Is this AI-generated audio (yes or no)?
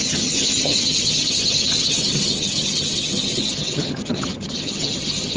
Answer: yes